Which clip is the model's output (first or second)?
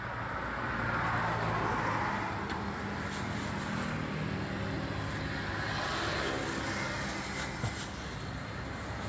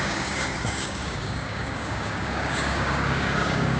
second